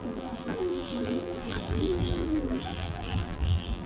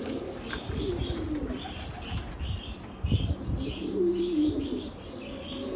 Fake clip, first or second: first